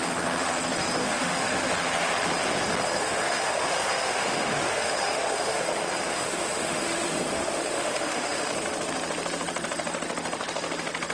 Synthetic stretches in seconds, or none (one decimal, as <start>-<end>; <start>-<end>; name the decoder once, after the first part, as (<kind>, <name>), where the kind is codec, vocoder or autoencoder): 1.0-1.7 (autoencoder, DAC-VAE); 3.0-5.6; 6.1-8.5